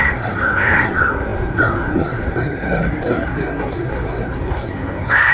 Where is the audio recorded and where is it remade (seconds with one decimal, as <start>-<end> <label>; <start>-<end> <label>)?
0.0-5.3 remade